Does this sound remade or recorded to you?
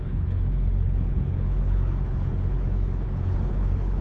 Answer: remade